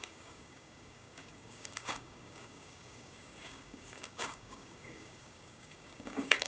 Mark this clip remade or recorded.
remade